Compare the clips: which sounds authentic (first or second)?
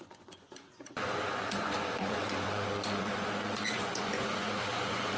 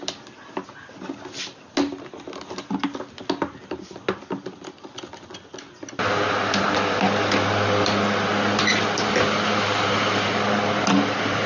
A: second